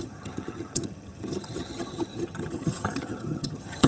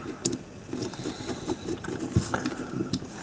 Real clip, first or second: second